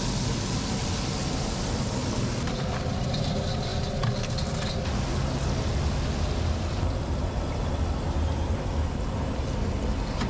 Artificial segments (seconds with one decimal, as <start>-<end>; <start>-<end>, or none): none